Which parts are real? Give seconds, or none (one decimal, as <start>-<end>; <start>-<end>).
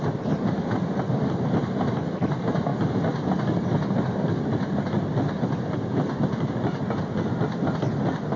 0.0-8.4